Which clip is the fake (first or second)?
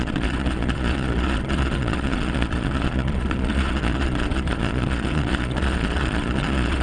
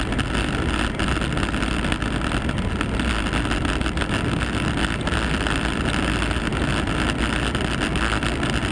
first